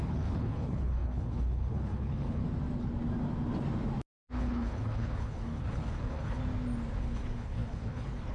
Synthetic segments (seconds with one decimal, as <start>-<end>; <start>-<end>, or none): 0.0-2.4; 4.4-6.4; 7.0-8.3